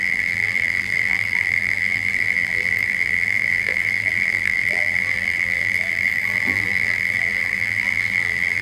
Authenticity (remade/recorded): remade